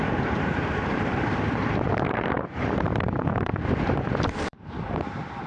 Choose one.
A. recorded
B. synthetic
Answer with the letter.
B